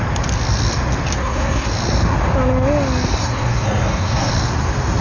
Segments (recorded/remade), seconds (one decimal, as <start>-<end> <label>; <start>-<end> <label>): 0.0-1.2 recorded; 1.2-1.7 remade; 1.7-3.2 recorded; 3.2-4.3 remade; 4.3-5.0 recorded